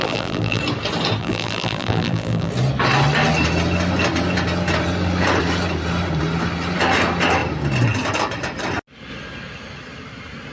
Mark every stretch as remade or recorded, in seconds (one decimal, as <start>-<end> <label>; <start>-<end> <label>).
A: 0.0-0.6 remade; 0.6-1.2 recorded; 1.2-2.5 remade; 2.5-10.5 recorded